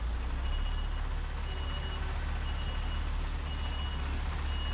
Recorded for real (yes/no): yes